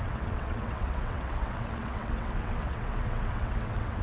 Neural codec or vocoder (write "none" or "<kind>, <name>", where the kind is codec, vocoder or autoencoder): vocoder, WaveNeXt